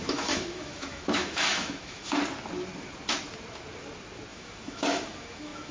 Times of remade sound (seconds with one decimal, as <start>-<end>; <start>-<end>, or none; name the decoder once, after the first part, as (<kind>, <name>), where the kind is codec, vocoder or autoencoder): 0.0-2.2 (autoencoder, DAC-VAE); 4.3-5.7